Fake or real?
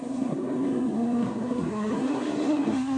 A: fake